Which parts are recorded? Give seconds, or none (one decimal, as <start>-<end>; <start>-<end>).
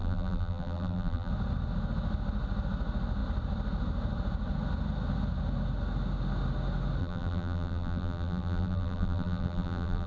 1.3-7.0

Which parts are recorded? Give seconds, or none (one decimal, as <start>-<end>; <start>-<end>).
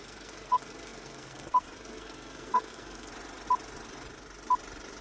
3.1-5.0